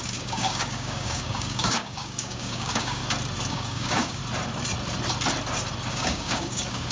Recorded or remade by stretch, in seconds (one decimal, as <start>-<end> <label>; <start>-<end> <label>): 0.0-3.0 remade; 3.0-3.5 recorded; 3.5-4.2 remade; 4.2-5.9 recorded; 5.9-6.9 remade